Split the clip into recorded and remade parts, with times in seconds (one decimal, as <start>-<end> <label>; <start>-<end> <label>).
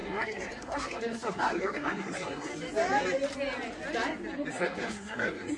0.0-2.5 remade; 2.5-4.5 recorded; 4.5-5.6 remade